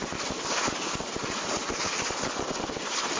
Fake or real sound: real